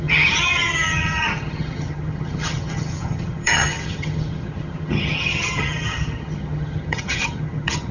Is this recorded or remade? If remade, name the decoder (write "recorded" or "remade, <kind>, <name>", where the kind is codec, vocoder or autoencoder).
remade, vocoder, HiFi-GAN